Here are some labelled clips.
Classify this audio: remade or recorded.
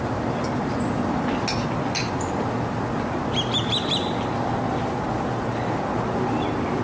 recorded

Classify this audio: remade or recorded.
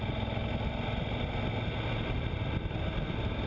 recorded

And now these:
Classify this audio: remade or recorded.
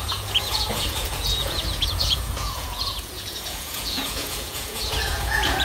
remade